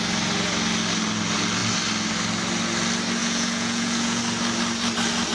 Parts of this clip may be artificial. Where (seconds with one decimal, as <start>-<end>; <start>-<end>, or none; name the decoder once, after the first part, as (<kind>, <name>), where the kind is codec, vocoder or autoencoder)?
3.2-4.2 (vocoder, Vocos)